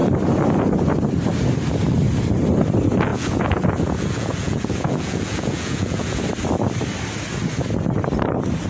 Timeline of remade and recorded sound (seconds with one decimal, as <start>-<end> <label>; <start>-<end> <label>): 0.0-3.1 recorded; 3.1-6.2 remade; 6.2-8.7 recorded

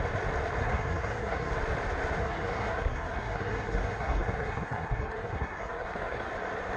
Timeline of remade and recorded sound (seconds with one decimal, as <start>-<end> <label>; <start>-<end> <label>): 0.0-0.6 recorded; 0.6-1.5 remade; 1.5-2.2 recorded; 2.2-6.3 remade; 6.3-6.8 recorded